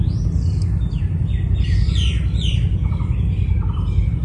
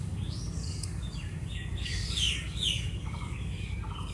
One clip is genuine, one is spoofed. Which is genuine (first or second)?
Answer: first